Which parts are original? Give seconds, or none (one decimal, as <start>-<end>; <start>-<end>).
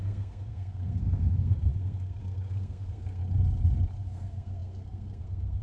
3.2-4.0